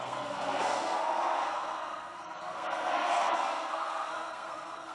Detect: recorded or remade remade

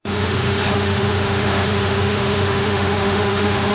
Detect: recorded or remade remade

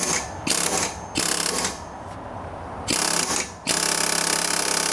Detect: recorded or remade recorded